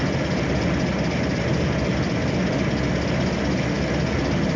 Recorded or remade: recorded